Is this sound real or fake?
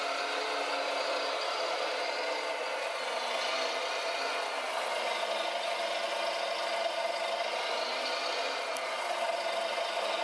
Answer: real